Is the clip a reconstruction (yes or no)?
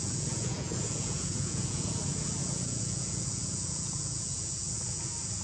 yes